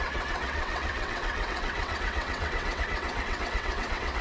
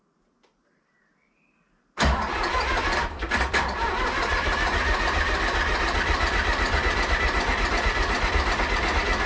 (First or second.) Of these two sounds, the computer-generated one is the first